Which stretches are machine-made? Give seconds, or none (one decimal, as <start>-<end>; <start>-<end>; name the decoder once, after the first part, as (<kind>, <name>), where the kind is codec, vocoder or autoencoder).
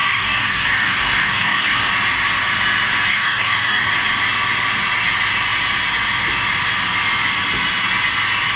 0.0-1.9 (codec, DAC); 3.1-3.9